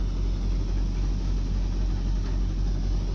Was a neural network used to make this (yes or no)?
no